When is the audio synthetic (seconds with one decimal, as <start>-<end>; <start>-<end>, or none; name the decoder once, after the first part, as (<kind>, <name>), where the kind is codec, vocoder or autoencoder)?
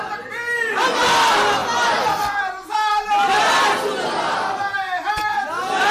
none